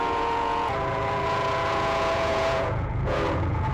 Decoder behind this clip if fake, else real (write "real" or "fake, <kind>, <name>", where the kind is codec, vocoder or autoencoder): fake, vocoder, Vocos